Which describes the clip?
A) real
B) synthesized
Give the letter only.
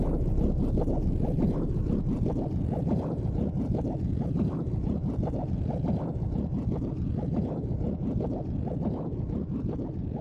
A